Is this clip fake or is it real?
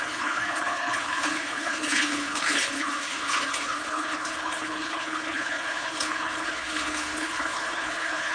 fake